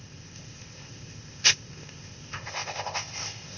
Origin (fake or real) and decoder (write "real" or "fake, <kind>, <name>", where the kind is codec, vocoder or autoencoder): fake, codec, ZipCodec